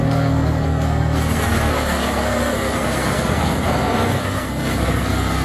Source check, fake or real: fake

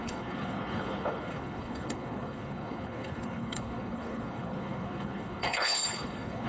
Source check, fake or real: fake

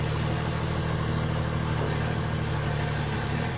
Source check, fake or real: real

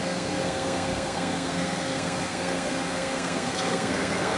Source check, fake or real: fake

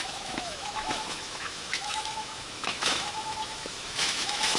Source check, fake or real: fake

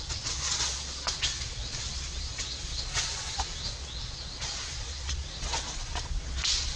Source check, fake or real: fake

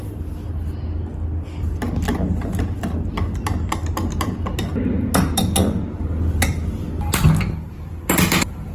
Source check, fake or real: real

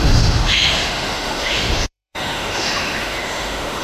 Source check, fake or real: fake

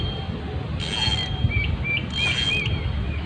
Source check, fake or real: real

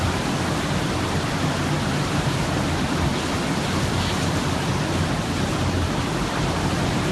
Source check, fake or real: real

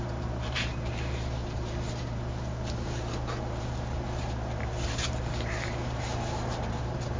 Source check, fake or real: fake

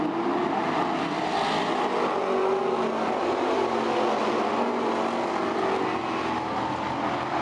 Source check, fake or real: real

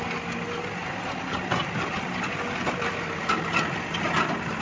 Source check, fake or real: real